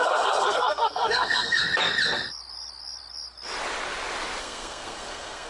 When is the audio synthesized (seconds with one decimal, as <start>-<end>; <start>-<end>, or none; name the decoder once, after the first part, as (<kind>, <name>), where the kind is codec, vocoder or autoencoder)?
0.0-1.6 (codec, SNAC); 4.4-5.5